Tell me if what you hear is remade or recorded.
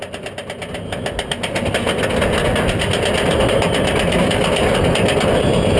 recorded